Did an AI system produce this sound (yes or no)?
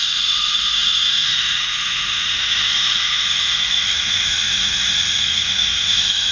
yes